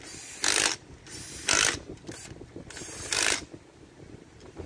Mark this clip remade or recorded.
recorded